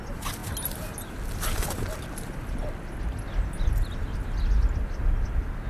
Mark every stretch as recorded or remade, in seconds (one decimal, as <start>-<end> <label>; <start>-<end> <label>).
0.0-5.7 recorded